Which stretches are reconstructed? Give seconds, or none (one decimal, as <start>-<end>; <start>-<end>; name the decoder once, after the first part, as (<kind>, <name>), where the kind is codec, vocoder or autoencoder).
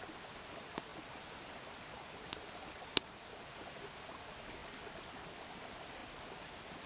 0.9-3.4 (vocoder, BigVGAN v2); 6.0-6.9